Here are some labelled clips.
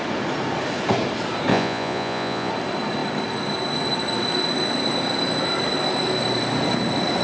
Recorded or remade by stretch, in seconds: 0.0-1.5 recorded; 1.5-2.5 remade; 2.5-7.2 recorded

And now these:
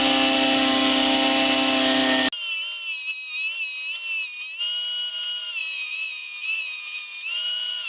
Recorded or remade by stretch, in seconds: 0.0-5.6 recorded; 5.6-7.9 remade

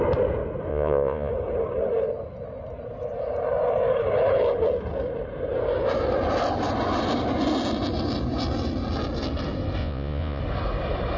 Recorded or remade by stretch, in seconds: 0.0-0.7 recorded; 0.7-1.3 remade; 1.3-9.8 recorded; 9.8-10.4 remade; 10.4-11.2 recorded

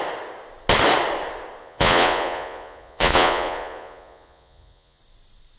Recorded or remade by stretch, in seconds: 0.0-1.6 recorded; 1.6-5.0 remade; 5.0-5.6 recorded